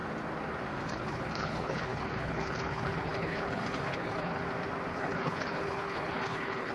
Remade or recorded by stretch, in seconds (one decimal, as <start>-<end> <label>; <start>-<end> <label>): 0.0-0.9 recorded; 0.9-4.4 remade; 4.4-4.9 recorded; 4.9-6.7 remade